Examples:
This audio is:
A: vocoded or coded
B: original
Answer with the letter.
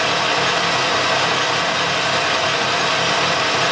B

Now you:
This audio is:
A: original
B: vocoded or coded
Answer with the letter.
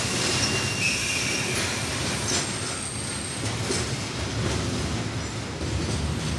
A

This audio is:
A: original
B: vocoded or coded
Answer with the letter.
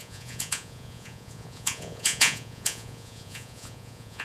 B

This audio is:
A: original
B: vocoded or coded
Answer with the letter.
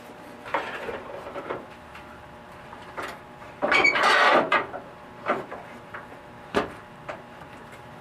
B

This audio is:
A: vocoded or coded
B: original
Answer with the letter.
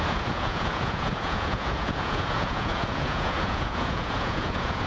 A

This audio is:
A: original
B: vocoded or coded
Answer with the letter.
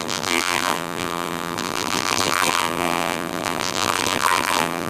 B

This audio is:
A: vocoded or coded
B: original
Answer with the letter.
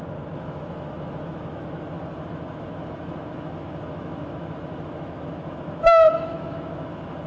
A